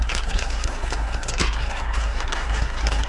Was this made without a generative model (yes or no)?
no